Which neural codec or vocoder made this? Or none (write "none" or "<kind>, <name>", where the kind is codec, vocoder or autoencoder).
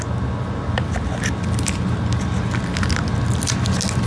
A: none